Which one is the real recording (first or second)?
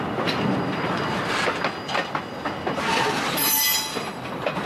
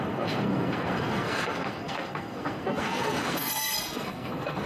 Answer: first